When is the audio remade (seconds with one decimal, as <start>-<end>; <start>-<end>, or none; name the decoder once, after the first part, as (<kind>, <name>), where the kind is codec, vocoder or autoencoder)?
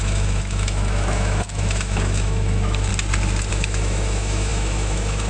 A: 0.0-2.9 (autoencoder, DAC-VAE); 3.5-5.3